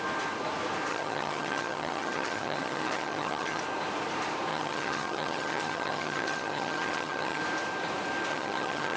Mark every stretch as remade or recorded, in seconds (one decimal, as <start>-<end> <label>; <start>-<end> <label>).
0.0-0.9 recorded; 0.9-3.6 remade; 3.6-4.5 recorded; 4.5-7.4 remade; 7.4-8.3 recorded; 8.3-9.0 remade

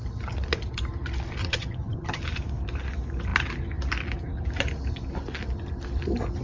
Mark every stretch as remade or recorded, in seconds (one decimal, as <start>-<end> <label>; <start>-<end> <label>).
0.0-1.4 recorded; 1.4-2.2 remade; 2.2-6.4 recorded

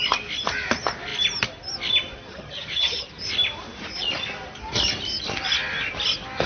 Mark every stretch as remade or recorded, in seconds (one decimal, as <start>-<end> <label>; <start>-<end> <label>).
0.0-2.3 recorded; 2.3-3.1 remade; 3.1-6.5 recorded

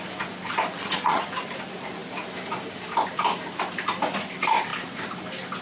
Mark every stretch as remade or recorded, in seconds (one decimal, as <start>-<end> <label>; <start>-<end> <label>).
0.0-0.8 recorded; 0.8-1.3 remade; 1.3-5.6 recorded

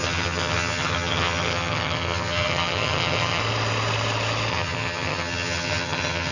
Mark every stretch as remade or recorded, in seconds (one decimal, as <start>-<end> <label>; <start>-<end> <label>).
0.0-3.4 remade; 3.4-4.5 recorded; 4.5-6.3 remade

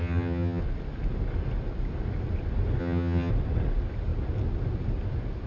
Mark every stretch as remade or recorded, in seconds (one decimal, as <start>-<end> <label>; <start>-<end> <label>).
0.0-0.6 remade; 0.6-2.8 recorded; 2.8-3.3 remade; 3.3-5.5 recorded